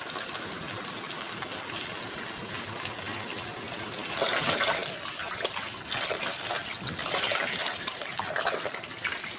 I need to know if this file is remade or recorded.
recorded